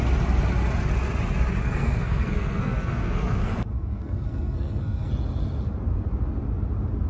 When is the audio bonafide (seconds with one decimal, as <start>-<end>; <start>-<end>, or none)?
0.0-1.6; 5.1-7.1